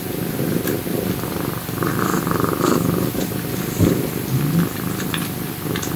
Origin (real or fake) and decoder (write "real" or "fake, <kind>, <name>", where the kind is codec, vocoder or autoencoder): real